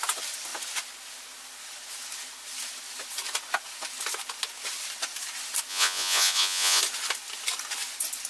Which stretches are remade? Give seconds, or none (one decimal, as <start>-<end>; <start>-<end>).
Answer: 5.7-6.8